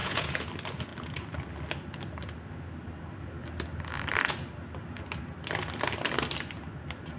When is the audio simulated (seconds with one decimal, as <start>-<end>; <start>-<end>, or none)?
0.0-0.5